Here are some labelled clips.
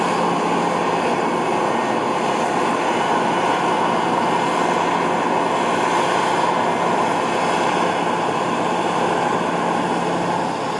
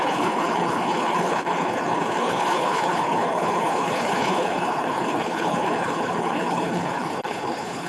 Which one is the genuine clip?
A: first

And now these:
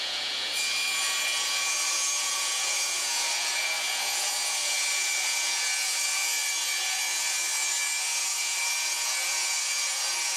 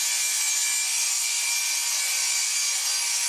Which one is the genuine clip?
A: second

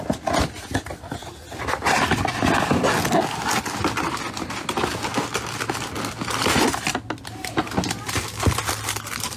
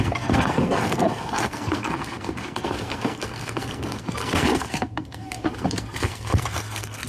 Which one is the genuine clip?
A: first